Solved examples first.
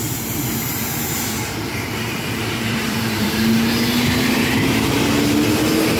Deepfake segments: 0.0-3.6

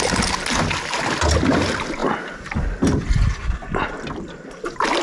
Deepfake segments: 2.0-4.5

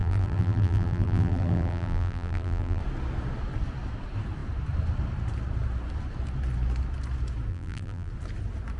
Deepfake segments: 0.0-2.8; 7.5-8.1

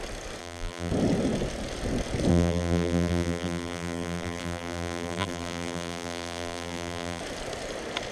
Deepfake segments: 0.4-0.9; 2.3-7.2